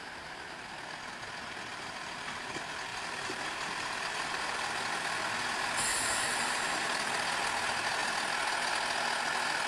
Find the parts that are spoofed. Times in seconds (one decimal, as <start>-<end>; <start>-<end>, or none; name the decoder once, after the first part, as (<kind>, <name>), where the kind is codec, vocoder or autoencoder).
1.7-2.4 (vocoder, BigVGAN v2); 2.9-4.7; 5.9-7.2